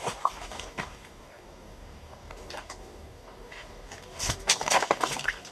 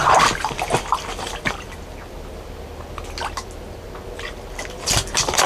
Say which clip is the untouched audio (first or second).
second